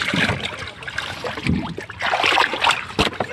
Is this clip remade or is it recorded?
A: recorded